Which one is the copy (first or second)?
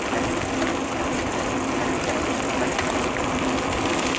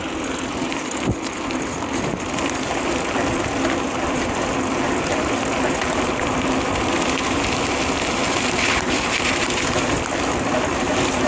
second